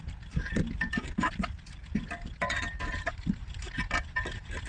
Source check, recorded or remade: recorded